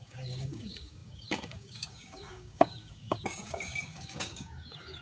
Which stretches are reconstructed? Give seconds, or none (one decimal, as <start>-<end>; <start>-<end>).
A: 0.0-5.0